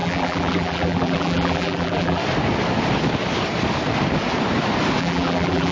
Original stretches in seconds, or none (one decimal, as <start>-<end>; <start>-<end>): 2.2-5.0